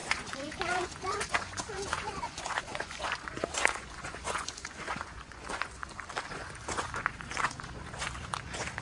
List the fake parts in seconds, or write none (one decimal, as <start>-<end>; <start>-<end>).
0.0-5.8; 6.3-8.8